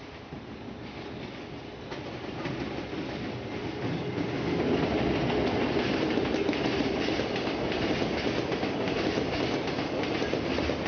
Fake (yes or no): no